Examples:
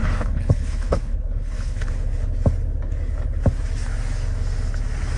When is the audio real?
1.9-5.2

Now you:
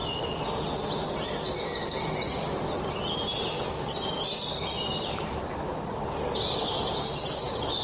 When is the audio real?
0.0-7.8

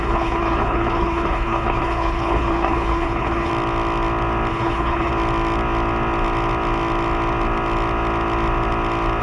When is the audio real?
3.5-4.5; 5.1-9.2

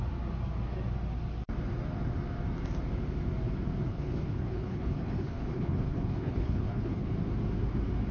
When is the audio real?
0.0-3.9; 7.1-8.1

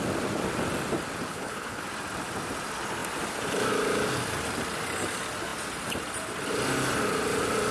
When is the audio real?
0.0-1.3; 1.8-7.7

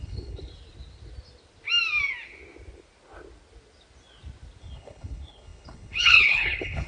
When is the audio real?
0.5-4.6

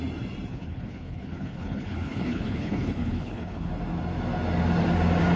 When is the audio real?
0.0-0.5; 3.7-5.4